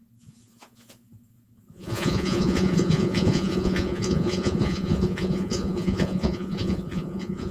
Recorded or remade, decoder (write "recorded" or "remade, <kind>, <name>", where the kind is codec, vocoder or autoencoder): remade, vocoder, Vocos